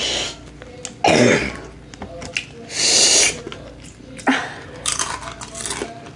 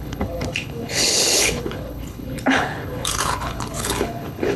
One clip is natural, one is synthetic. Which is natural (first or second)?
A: first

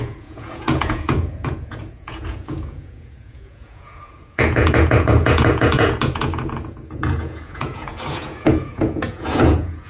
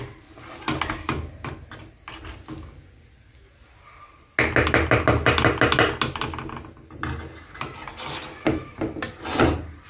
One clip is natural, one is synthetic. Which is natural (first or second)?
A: second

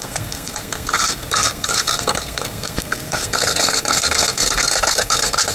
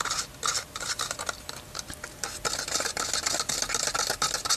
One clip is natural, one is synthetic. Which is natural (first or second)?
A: second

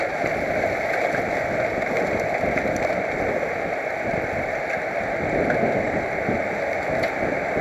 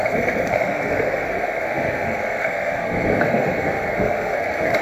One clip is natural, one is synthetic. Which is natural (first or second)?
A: first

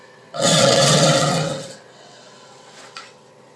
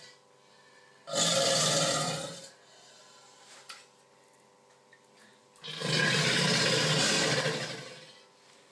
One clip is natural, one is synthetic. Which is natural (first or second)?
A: second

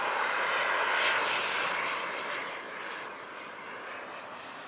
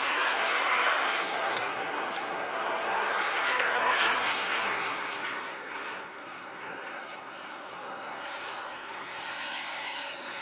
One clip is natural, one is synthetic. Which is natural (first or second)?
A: first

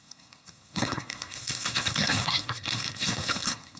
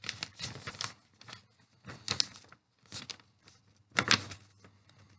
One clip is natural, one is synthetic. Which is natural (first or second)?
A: second